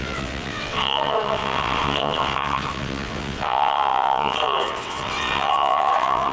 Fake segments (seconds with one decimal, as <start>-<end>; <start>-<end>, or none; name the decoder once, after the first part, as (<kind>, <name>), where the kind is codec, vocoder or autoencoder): 0.0-6.3 (vocoder, WaveNeXt)